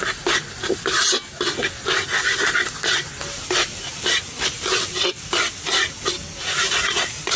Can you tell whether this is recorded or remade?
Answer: recorded